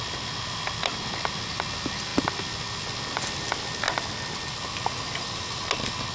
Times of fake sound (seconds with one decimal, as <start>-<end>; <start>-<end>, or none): none